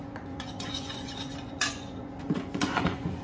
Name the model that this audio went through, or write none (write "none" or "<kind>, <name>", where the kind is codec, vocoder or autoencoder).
vocoder, Vocos